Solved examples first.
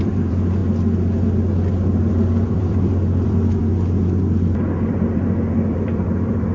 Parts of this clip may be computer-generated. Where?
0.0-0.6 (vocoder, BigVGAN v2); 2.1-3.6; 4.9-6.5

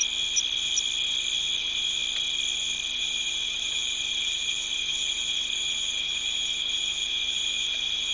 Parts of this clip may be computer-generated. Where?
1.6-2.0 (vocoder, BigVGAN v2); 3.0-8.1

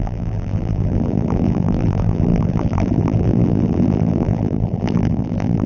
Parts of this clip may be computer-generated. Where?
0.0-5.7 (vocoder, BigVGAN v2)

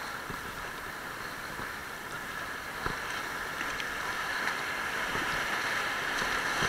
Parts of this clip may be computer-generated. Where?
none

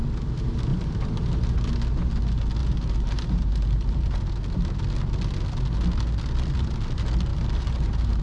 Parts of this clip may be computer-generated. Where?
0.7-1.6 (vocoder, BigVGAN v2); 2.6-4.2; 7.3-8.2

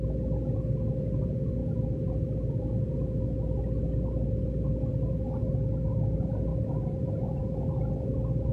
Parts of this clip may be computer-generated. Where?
none

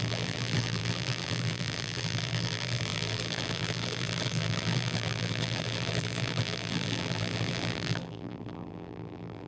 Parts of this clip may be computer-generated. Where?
0.0-9.5 (vocoder, BigVGAN v2)